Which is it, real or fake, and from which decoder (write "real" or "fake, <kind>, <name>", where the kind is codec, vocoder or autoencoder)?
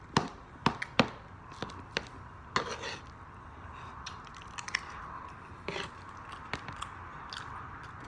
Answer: real